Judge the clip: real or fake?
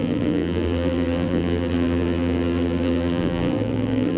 fake